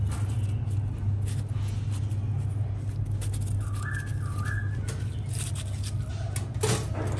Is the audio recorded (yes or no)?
yes